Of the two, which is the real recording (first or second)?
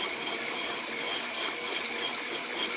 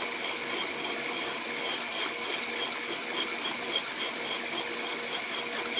second